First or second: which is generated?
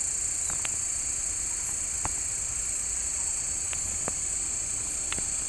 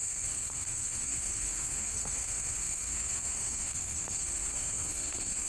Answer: second